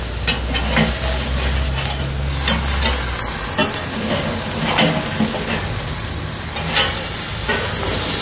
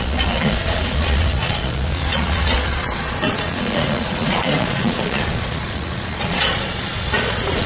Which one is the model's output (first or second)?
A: second